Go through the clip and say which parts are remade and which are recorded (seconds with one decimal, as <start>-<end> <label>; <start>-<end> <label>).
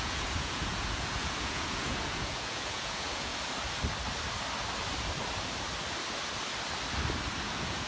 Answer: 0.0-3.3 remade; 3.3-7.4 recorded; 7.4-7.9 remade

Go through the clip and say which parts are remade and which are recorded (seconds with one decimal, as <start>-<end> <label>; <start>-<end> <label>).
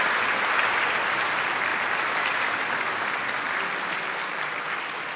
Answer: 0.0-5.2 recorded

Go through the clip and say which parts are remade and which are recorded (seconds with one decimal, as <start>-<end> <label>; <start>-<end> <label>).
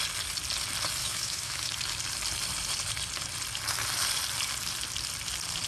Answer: 0.0-1.0 recorded; 1.0-1.7 remade; 1.7-5.7 recorded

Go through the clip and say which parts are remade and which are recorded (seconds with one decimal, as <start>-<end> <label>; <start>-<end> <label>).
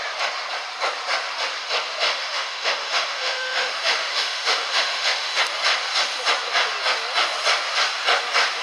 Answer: 0.0-2.1 recorded; 2.1-5.4 remade; 5.4-8.6 recorded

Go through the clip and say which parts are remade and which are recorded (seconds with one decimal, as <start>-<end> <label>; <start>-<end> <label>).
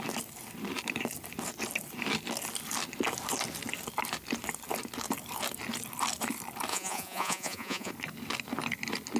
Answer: 0.0-6.7 recorded; 6.7-7.9 remade; 7.9-9.2 recorded